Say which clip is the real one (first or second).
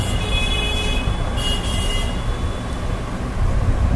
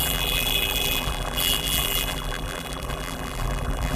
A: first